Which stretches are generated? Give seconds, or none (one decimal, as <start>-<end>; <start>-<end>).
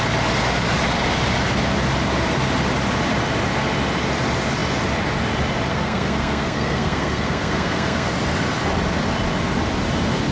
5.7-8.1